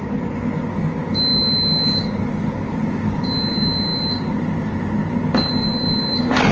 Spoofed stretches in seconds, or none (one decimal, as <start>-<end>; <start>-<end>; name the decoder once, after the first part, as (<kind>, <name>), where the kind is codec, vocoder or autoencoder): none